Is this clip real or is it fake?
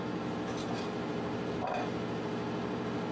fake